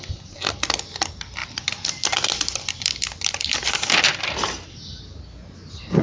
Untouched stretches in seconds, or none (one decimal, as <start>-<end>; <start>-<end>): 0.0-1.4; 5.0-6.0